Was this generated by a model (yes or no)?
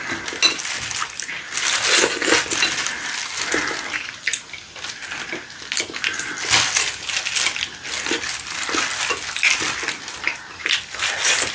no